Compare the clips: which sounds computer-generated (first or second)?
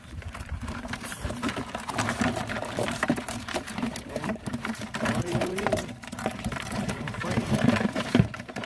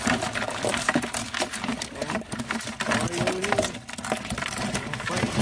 first